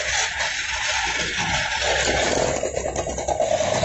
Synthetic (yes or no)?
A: no